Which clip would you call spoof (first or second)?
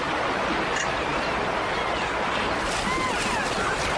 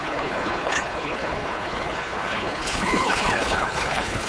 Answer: second